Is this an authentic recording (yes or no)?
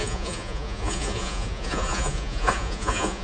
no